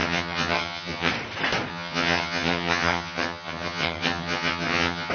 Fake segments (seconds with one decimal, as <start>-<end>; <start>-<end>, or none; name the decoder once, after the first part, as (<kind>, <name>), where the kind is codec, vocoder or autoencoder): 0.0-1.1 (vocoder, HiFi-GAN); 1.7-5.1